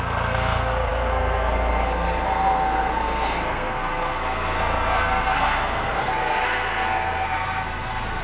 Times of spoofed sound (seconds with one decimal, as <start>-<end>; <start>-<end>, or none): 0.0-8.2